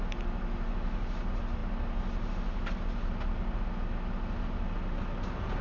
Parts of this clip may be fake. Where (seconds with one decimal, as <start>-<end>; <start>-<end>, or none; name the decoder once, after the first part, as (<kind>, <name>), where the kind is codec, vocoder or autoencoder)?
none